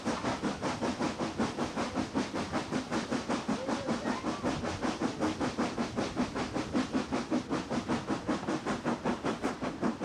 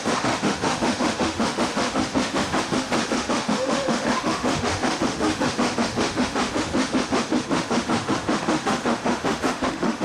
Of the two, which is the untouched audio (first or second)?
first